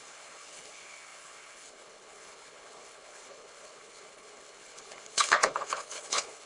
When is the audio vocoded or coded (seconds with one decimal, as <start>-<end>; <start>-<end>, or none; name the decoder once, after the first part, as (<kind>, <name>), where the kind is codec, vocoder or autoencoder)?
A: 0.0-6.5 (codec, HILCodec)

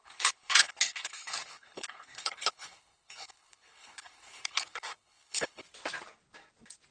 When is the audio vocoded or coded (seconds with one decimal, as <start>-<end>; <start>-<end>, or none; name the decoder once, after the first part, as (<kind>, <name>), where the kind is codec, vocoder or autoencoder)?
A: 0.0-5.6 (codec, HILCodec)